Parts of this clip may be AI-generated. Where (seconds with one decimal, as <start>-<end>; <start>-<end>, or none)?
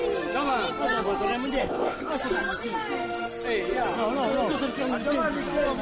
1.6-2.1